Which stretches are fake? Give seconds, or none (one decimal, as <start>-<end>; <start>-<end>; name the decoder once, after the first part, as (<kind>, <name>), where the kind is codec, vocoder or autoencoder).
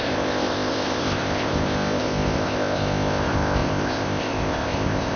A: 0.0-5.2 (codec, ZipCodec)